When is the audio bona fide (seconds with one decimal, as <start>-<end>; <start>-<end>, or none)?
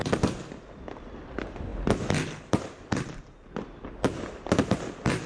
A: 0.0-5.3